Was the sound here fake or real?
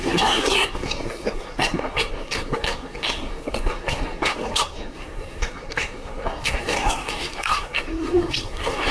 fake